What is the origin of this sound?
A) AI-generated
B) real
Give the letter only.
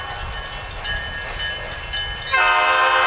B